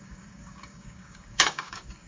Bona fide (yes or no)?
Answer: no